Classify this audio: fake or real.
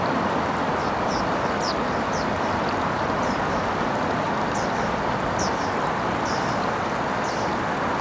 real